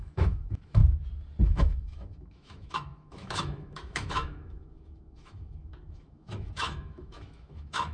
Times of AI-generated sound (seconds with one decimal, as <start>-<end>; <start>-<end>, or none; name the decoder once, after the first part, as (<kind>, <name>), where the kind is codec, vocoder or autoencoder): 0.0-0.8 (autoencoder, DAC-VAE); 1.4-7.9